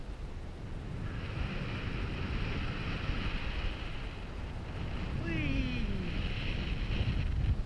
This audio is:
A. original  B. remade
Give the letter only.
A